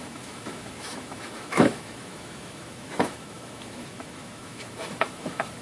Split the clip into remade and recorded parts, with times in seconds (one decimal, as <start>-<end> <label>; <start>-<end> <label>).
0.0-5.6 remade